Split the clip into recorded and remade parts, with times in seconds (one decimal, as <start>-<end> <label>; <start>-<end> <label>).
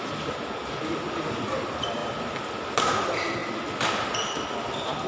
0.0-5.1 recorded